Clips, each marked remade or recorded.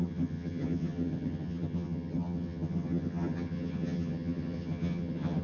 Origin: remade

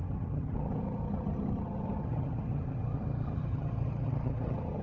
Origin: remade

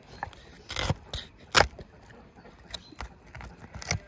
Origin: recorded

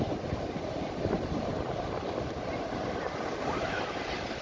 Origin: recorded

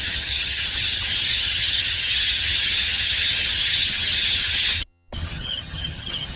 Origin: remade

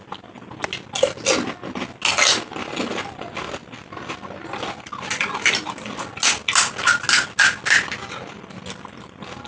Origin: recorded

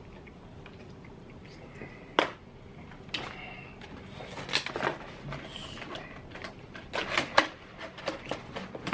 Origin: recorded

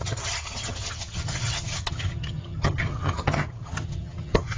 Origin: remade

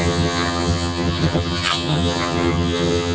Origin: remade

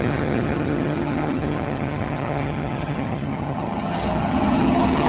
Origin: remade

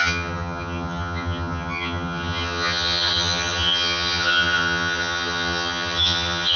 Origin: remade